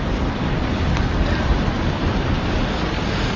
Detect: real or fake real